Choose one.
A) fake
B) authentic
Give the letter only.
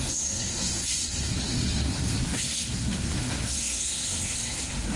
A